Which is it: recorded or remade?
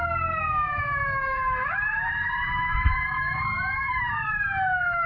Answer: remade